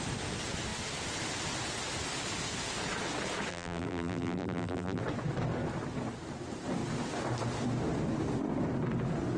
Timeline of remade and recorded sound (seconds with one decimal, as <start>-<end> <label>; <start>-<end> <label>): 0.0-3.5 recorded; 3.5-5.0 remade; 5.0-9.4 recorded